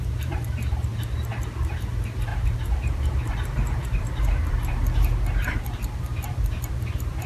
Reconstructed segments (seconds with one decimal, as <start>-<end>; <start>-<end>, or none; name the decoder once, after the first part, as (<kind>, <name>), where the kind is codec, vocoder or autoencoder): 0.0-0.9 (vocoder, BigVGAN v2); 1.7-7.3

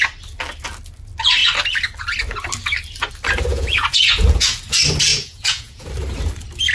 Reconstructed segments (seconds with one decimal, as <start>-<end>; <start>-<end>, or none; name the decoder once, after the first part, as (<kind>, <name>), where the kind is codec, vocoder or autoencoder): 3.5-4.6 (vocoder, Vocos); 5.1-5.9

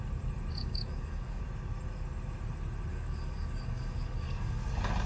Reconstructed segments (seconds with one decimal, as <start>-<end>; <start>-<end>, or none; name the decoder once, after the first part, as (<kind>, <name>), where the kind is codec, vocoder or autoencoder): 0.5-1.4 (codec, DAC); 2.9-4.6

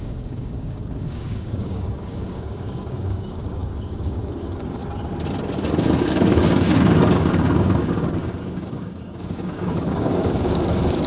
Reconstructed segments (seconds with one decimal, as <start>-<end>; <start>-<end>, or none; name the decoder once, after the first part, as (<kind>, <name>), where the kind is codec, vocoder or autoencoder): 0.0-4.8 (codec, DAC); 6.0-11.1

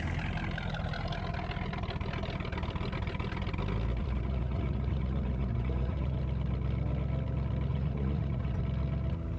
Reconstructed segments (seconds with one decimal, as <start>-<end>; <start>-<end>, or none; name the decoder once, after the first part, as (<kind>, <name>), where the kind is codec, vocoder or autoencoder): 4.0-6.2 (vocoder, Vocos); 7.7-8.6

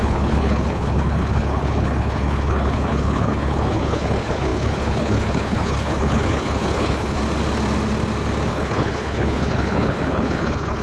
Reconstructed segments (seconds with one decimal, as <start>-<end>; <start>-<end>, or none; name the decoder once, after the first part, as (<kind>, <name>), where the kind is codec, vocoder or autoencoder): 0.0-7.2 (codec, HILCodec); 8.5-10.8

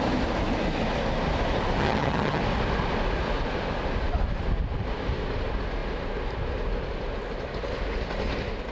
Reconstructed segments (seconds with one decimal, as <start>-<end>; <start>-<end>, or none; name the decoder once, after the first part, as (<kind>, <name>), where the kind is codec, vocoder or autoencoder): 1.8-2.4 (vocoder, HiFi-GAN)

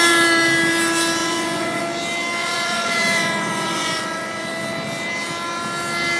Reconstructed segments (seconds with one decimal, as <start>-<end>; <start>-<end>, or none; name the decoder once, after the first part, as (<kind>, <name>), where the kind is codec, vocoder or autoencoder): 1.2-1.8 (vocoder, Vocos); 2.4-4.5